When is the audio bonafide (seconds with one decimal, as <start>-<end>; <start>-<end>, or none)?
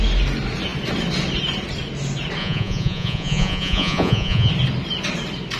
0.0-2.4; 4.5-5.6